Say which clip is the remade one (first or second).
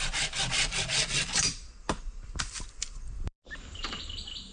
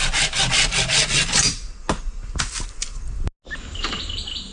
first